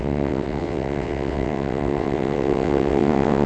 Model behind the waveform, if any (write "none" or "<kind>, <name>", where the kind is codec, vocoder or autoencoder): vocoder, WaveNeXt